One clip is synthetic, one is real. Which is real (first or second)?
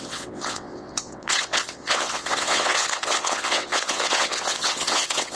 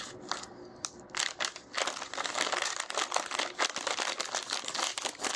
second